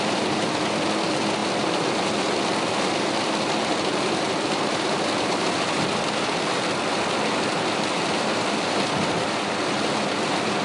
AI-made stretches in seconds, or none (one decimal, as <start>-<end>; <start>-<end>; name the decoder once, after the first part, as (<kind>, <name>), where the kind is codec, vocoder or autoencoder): 0.0-10.6 (vocoder, BigVGAN v2)